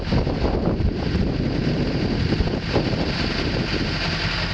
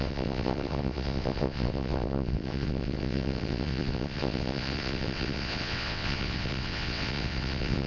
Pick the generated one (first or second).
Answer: second